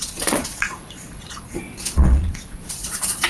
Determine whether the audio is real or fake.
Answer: fake